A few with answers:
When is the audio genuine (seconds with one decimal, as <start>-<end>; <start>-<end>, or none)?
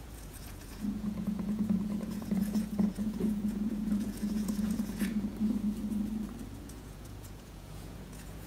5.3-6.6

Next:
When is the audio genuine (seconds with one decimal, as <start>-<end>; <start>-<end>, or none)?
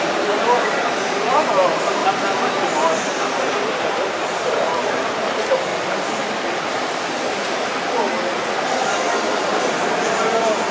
2.0-3.7; 5.7-9.4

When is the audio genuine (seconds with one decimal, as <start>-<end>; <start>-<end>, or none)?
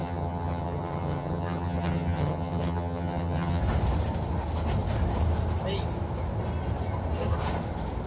3.6-8.1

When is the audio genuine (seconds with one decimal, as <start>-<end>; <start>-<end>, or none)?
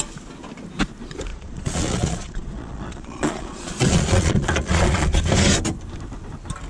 0.0-1.3; 5.2-6.7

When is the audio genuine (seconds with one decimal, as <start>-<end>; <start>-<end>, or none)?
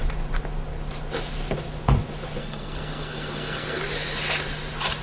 0.0-2.4; 3.8-5.0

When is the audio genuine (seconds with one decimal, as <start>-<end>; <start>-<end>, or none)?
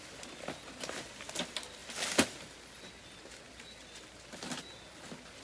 0.0-5.4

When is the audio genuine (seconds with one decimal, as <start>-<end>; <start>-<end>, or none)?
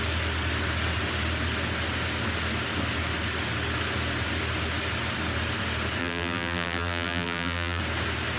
0.0-6.0; 7.8-8.4